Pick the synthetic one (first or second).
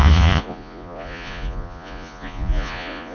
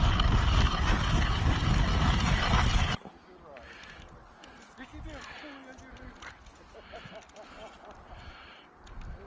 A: first